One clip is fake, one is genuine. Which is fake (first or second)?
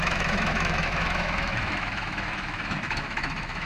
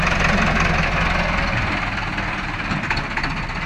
first